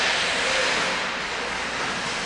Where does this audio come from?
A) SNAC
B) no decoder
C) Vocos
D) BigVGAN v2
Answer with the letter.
B